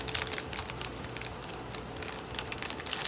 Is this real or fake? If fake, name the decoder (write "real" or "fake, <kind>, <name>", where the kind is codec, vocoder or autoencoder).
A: fake, vocoder, BigVGAN v2